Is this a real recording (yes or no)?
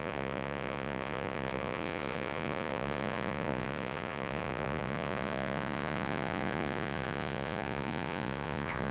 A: no